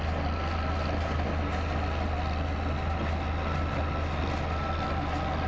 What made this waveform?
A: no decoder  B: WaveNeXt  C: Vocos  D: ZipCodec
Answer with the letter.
A